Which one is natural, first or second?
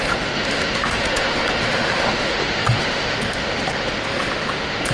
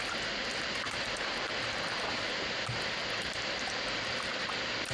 second